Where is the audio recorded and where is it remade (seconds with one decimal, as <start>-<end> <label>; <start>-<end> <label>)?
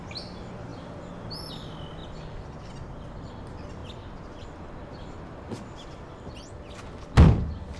0.0-2.0 recorded; 2.0-3.3 remade; 3.3-3.8 recorded; 3.8-6.0 remade; 6.0-7.8 recorded